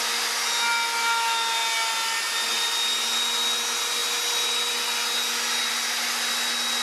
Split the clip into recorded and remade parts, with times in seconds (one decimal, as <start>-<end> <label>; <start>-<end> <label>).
0.0-6.8 recorded